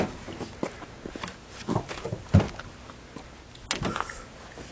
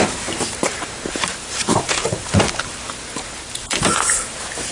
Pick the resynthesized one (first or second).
second